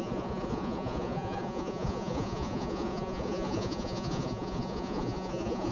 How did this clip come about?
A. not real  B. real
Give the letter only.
A